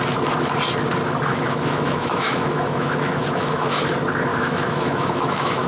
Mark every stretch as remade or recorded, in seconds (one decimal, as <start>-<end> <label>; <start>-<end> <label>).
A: 0.0-1.3 recorded; 1.3-3.8 remade; 3.8-4.3 recorded; 4.3-5.7 remade